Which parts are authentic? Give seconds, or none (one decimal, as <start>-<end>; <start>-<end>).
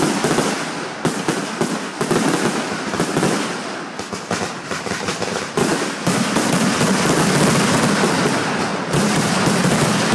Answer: 0.0-8.7; 9.3-10.1